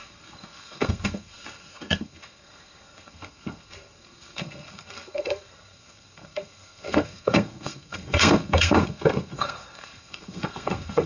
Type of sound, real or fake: fake